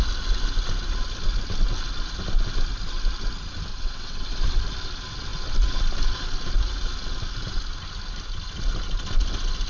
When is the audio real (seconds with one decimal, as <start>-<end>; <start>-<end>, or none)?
0.0-3.7; 4.3-9.7